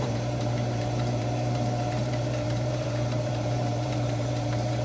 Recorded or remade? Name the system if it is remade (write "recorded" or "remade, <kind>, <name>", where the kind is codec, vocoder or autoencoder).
remade, vocoder, BigVGAN v2